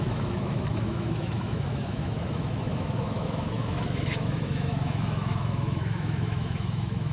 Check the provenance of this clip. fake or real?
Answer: fake